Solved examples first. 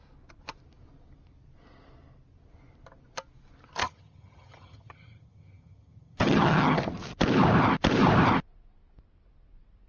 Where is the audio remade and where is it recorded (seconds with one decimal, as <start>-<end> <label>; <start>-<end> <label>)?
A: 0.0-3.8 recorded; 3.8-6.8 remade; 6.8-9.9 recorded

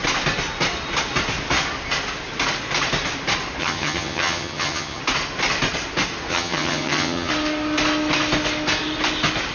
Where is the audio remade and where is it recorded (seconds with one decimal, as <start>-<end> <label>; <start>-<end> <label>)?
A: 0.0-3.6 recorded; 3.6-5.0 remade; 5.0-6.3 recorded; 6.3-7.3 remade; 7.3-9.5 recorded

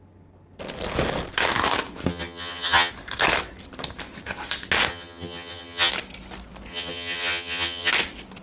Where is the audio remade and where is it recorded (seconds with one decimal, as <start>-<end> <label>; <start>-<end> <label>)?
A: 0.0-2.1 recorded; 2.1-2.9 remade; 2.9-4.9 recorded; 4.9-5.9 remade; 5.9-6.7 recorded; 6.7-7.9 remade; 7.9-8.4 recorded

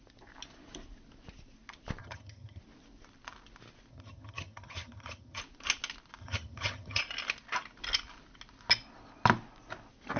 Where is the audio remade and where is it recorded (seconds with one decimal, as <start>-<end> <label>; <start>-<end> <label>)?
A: 0.0-2.0 recorded; 2.0-2.6 remade; 2.6-3.9 recorded; 3.9-5.4 remade; 5.4-6.2 recorded; 6.2-7.0 remade; 7.0-10.2 recorded

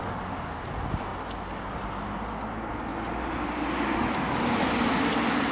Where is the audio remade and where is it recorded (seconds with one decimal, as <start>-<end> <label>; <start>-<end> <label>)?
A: 0.0-5.5 recorded